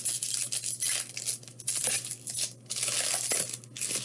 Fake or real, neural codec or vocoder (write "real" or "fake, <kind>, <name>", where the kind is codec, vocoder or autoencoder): real